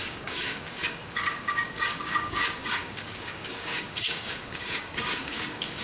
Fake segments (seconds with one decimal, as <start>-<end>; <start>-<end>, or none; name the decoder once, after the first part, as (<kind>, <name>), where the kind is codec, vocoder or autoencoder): 0.0-5.8 (codec, DAC)